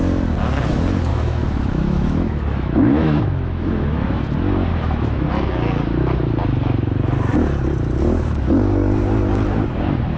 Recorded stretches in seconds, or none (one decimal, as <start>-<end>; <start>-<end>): 0.0-1.1; 4.2-4.7; 5.3-10.2